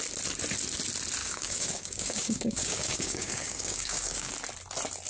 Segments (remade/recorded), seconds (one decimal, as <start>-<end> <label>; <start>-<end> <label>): 0.0-1.2 recorded; 1.2-4.3 remade; 4.3-5.1 recorded